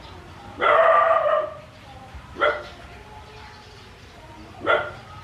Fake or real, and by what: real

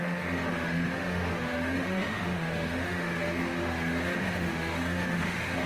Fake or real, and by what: fake, autoencoder, DAC-VAE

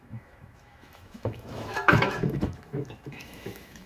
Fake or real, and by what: fake, autoencoder, DAC-VAE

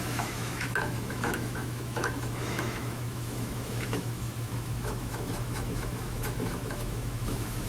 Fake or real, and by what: fake, autoencoder, DAC-VAE